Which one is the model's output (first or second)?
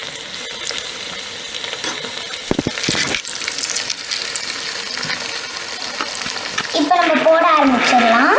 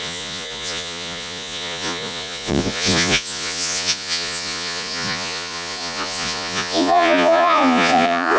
second